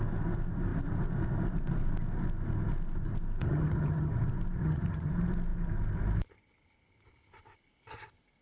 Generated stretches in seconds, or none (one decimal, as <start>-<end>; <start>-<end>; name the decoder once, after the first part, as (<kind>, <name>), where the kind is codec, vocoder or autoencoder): 3.4-4.1 (vocoder, HiFi-GAN); 4.6-5.1